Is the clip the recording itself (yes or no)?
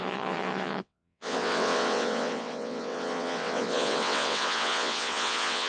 no